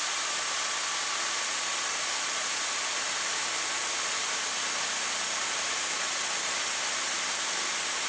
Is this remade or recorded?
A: recorded